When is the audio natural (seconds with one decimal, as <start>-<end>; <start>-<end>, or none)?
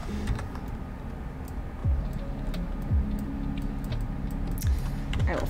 0.6-5.5